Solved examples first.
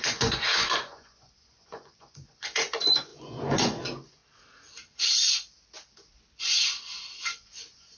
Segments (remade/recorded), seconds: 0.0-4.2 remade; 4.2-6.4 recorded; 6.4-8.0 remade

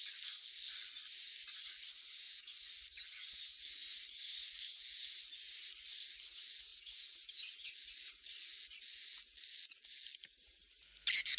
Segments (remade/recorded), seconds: 0.0-11.4 recorded

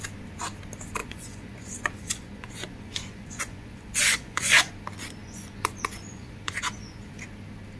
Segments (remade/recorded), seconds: 0.0-1.0 recorded; 1.0-4.7 remade; 4.7-5.2 recorded; 5.2-7.1 remade; 7.1-7.8 recorded

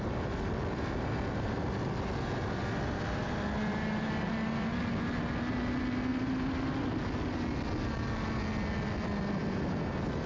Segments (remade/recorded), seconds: 0.0-10.3 recorded